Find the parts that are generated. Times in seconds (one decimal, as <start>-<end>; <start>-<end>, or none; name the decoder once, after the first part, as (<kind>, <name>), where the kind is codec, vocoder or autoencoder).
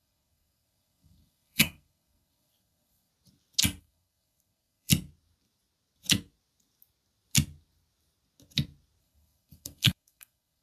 0.0-3.1 (codec, SNAC); 3.8-4.9; 9.0-10.6